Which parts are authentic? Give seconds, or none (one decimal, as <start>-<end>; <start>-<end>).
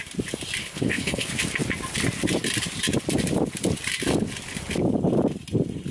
0.0-0.6; 1.3-5.9